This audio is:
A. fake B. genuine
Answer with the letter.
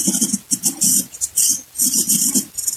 B